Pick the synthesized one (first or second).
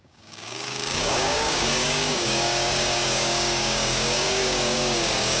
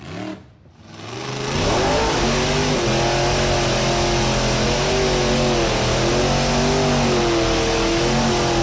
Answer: first